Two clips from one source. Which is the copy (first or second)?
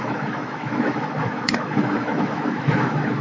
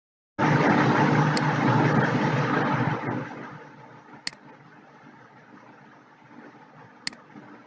first